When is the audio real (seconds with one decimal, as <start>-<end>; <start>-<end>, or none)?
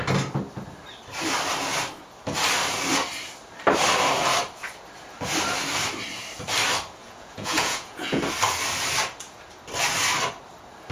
0.0-7.0; 8.2-10.9